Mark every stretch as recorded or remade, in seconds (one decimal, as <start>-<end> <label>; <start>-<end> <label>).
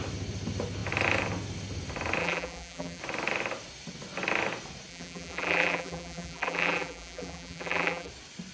0.0-2.2 recorded; 2.2-3.0 remade; 3.0-4.9 recorded; 4.9-8.1 remade; 8.1-8.5 recorded